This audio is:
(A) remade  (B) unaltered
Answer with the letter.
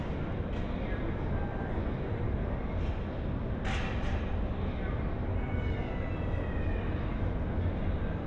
B